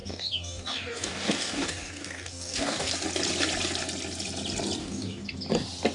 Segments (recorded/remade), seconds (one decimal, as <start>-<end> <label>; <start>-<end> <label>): 0.0-2.9 remade; 2.9-4.8 recorded; 4.8-5.4 remade; 5.4-5.9 recorded